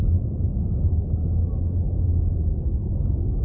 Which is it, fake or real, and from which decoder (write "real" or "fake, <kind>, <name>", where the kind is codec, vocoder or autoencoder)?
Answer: real